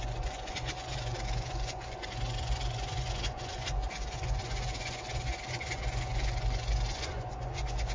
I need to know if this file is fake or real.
fake